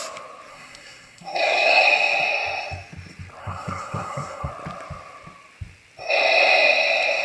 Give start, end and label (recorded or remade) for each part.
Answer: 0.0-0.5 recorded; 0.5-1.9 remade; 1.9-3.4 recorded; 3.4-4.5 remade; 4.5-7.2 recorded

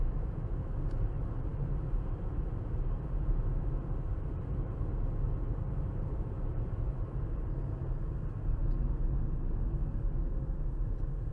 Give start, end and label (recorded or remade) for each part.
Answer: 0.0-11.3 recorded

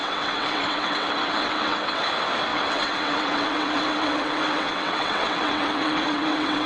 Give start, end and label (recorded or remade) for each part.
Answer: 0.0-2.0 remade; 2.0-2.5 recorded; 2.5-6.7 remade